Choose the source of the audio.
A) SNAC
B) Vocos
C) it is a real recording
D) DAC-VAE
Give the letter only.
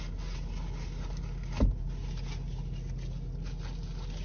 C